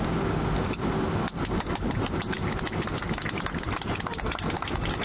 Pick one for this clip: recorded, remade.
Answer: recorded